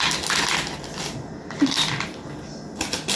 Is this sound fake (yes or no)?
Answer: no